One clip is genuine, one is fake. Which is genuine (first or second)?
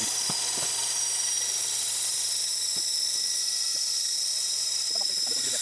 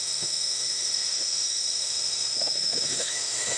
first